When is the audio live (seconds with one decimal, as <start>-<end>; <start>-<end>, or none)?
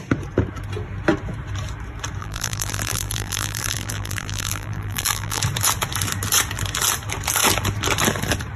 0.0-2.2; 5.4-8.6